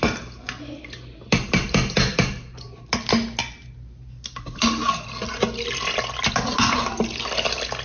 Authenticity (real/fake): real